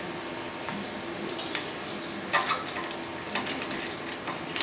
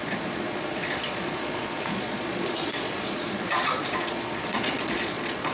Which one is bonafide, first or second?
first